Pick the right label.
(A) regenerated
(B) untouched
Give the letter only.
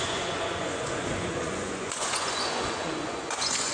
A